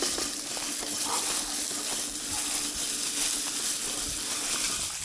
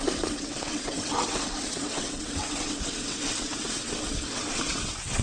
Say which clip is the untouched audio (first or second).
first